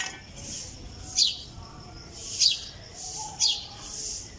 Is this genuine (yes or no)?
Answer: yes